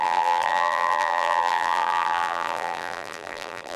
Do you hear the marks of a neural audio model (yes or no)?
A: yes